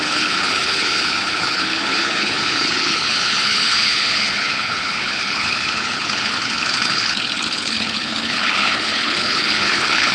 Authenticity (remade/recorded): remade